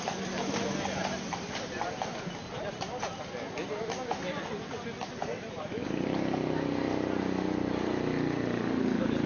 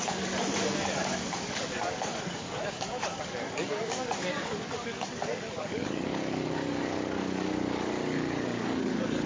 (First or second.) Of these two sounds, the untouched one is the first